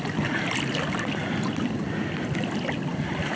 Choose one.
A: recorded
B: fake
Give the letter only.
A